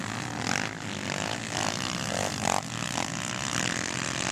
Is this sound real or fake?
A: real